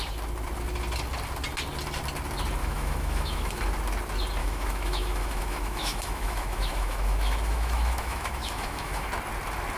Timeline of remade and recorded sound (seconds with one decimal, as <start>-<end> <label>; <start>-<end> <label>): 0.0-2.6 recorded; 2.6-3.6 remade; 3.6-4.4 recorded; 4.4-9.1 remade; 9.1-9.8 recorded